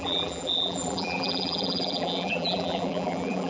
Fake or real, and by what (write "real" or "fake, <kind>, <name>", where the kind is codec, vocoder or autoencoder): fake, vocoder, BigVGAN v2